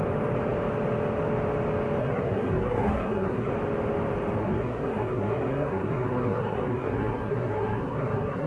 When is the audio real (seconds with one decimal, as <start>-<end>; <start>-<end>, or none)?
0.0-2.0; 3.5-4.4